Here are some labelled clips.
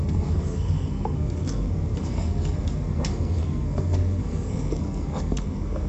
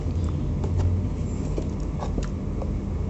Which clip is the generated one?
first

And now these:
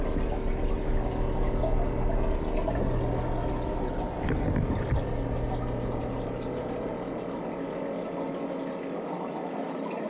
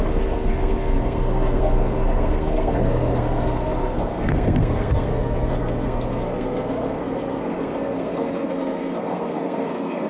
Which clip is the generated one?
second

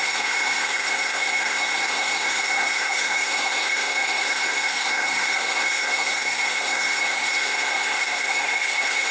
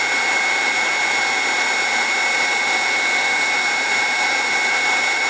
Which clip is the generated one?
first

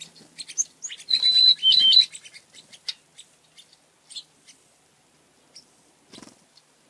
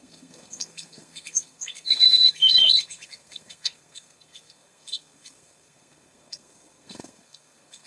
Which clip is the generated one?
second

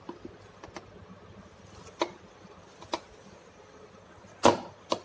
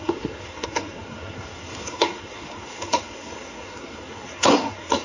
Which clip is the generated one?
second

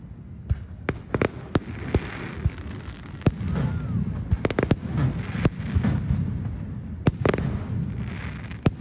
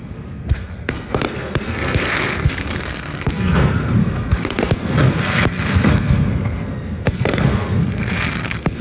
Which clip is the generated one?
second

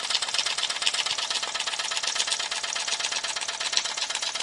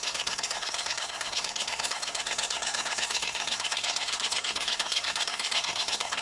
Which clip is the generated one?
second